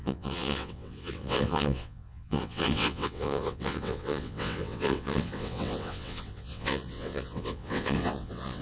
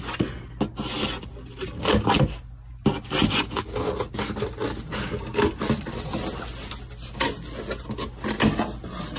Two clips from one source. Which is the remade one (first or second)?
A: first